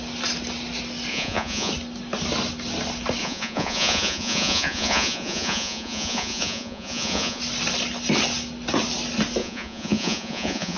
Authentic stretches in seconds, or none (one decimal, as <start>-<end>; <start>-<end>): 0.0-1.1; 1.7-3.2; 7.4-9.4

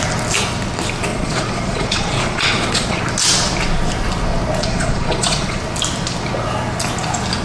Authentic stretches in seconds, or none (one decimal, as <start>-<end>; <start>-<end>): 0.0-1.1; 3.0-4.6; 5.6-7.4

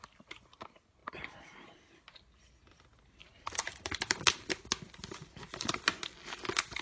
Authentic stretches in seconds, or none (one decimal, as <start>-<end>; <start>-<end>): 0.0-3.2; 4.6-6.8